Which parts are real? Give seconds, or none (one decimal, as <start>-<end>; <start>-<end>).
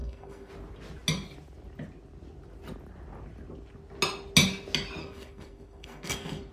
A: 0.5-5.0